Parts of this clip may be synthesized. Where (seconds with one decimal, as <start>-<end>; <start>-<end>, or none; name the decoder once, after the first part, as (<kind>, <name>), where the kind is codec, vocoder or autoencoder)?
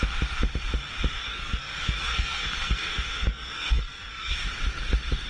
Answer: 1.1-4.3 (codec, SNAC)